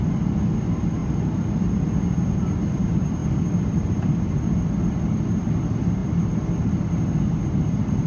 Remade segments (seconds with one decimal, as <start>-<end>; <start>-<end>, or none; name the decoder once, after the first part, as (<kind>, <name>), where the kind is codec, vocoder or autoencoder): 3.2-5.4 (vocoder, BigVGAN v2)